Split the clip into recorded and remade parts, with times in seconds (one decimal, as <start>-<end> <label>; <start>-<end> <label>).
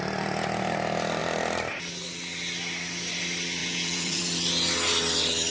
0.0-3.6 recorded; 3.6-4.2 remade; 4.2-5.5 recorded